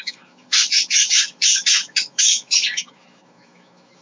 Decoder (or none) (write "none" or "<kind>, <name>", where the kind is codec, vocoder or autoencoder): autoencoder, DAC-VAE